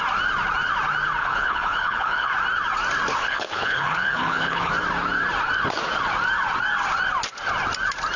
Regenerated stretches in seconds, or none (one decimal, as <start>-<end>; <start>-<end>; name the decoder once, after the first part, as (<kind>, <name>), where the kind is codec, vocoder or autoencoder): 1.2-2.3 (codec, HILCodec); 3.2-4.7